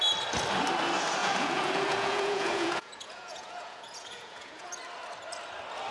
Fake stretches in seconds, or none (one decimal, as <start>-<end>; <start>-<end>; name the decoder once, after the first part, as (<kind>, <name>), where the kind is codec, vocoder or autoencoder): 1.2-4.7 (vocoder, Vocos)